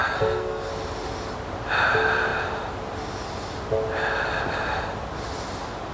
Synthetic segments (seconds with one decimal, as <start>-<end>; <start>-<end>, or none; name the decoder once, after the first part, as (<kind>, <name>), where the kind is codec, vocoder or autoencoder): 0.0-0.7 (codec, SNAC)